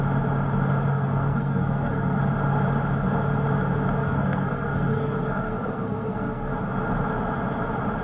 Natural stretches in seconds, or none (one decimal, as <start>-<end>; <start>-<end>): 0.0-0.9; 2.2-4.0; 6.5-8.0